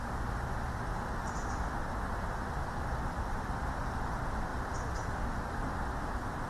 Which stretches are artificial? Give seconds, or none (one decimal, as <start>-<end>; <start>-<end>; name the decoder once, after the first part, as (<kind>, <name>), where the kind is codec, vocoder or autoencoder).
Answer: 0.9-1.7 (vocoder, BigVGAN v2); 2.6-3.7; 4.5-5.2

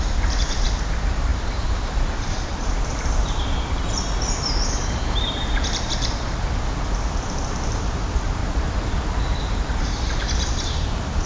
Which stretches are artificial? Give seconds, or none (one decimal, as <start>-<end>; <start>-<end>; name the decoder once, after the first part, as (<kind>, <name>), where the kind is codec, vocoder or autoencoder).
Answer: 0.0-8.4 (vocoder, BigVGAN v2); 9.2-11.3

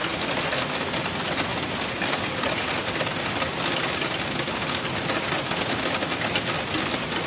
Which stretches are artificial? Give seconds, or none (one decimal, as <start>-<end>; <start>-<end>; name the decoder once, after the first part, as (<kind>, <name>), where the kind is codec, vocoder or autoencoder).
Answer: none

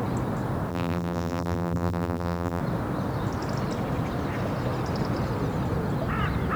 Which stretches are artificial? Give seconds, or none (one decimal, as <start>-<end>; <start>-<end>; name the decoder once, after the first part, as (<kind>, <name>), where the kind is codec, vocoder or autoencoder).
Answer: 0.7-2.6 (vocoder, BigVGAN v2)

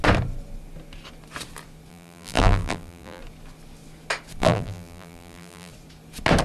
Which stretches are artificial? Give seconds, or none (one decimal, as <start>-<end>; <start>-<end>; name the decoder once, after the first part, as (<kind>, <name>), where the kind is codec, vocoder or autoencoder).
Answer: 1.9-3.2 (vocoder, BigVGAN v2); 4.4-5.7

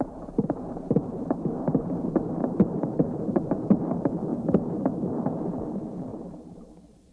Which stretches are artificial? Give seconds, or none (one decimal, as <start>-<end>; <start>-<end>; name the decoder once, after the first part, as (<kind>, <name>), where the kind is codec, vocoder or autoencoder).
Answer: 2.4-3.4 (vocoder, BigVGAN v2); 4.3-5.4; 6.1-7.1

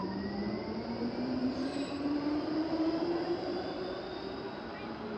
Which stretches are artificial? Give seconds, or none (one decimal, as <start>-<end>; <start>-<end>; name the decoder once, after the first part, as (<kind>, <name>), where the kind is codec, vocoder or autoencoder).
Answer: 0.8-5.2 (vocoder, BigVGAN v2)